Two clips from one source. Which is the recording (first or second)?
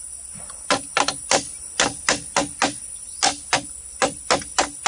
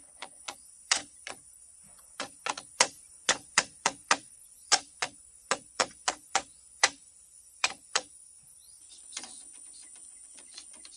first